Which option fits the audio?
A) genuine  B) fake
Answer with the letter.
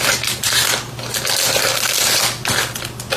A